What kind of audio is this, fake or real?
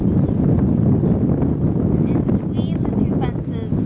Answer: real